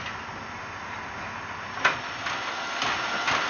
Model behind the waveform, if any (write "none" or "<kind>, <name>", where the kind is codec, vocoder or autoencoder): none